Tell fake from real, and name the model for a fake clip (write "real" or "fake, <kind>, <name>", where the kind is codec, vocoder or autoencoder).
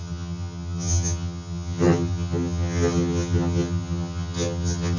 fake, vocoder, HiFi-GAN